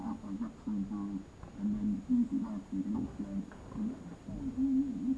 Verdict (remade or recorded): recorded